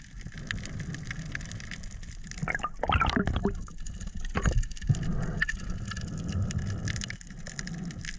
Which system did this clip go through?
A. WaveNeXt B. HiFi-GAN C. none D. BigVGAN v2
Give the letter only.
C